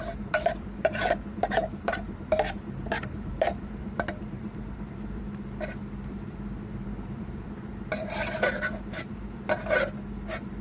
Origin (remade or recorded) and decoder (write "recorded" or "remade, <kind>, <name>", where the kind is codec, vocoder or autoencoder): remade, vocoder, BigVGAN v2